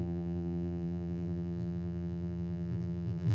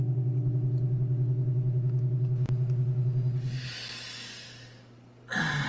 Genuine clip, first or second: second